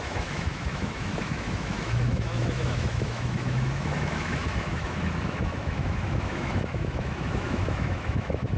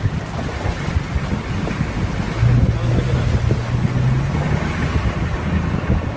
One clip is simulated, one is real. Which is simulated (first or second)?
first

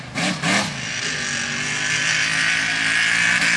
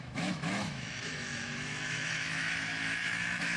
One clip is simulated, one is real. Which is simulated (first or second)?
second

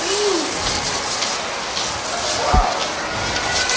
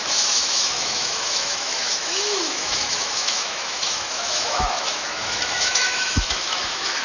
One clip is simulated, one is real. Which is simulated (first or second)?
second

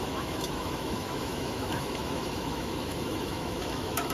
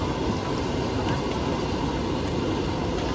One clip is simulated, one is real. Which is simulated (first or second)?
first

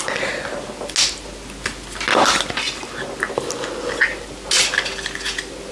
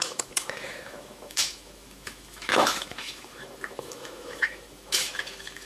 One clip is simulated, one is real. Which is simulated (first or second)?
second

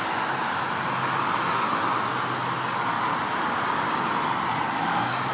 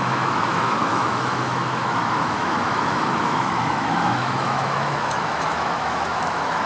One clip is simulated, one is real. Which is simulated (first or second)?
second